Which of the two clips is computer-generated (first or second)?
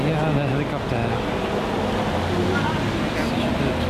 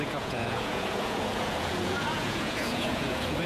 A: second